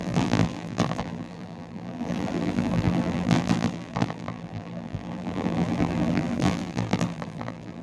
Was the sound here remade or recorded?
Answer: remade